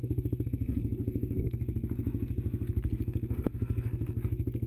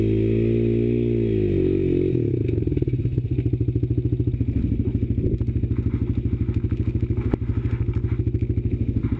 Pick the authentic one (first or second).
second